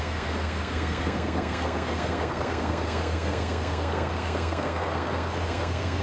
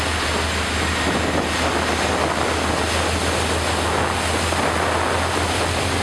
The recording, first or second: second